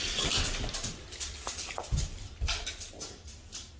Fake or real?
real